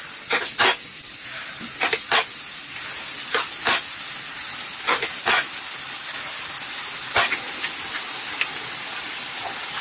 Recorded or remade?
recorded